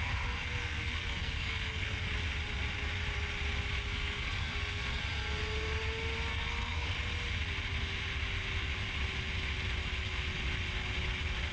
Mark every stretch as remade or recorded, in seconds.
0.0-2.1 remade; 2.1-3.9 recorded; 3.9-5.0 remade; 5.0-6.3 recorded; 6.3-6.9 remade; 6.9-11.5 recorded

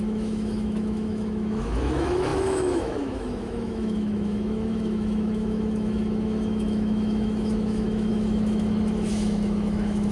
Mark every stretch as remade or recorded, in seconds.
0.0-10.1 remade

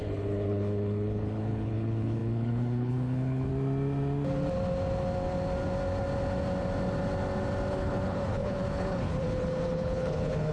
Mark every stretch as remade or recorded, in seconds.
0.0-3.5 remade; 3.5-7.7 recorded; 7.7-10.5 remade

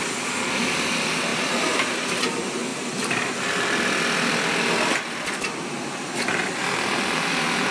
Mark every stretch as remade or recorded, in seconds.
0.0-7.7 recorded

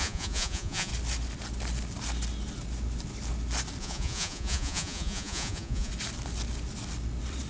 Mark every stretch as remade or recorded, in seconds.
0.0-0.9 remade; 0.9-3.8 recorded; 3.8-5.9 remade; 5.9-7.5 recorded

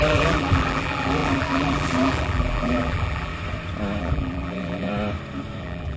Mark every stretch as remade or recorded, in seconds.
0.0-3.3 remade; 3.3-4.0 recorded; 4.0-4.9 remade; 4.9-5.6 recorded; 5.6-6.0 remade